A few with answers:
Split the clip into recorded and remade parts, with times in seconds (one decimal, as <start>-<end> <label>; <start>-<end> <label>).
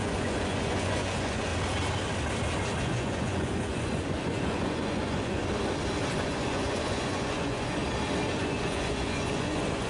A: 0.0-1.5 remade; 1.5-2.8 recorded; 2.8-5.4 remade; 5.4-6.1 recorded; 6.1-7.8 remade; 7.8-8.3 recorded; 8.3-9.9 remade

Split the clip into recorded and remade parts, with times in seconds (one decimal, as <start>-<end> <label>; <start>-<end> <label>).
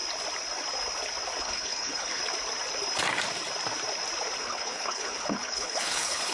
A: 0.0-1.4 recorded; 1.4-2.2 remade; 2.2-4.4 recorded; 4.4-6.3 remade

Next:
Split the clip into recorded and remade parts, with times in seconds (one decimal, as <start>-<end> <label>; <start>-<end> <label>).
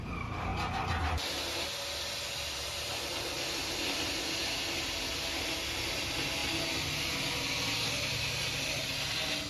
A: 0.0-9.5 recorded